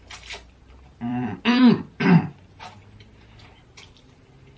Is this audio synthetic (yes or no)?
yes